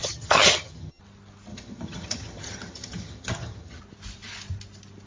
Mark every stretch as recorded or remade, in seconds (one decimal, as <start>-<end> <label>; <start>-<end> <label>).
0.0-1.0 remade; 1.0-1.5 recorded; 1.5-3.8 remade; 3.8-5.1 recorded